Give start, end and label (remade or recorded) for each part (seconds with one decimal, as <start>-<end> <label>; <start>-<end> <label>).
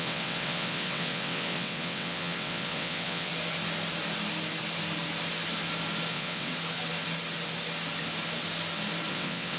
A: 0.0-3.3 remade; 3.3-6.1 recorded; 6.1-6.5 remade; 6.5-9.1 recorded; 9.1-9.6 remade